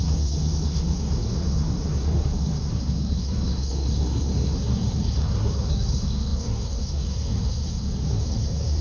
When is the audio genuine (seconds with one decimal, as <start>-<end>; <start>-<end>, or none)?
none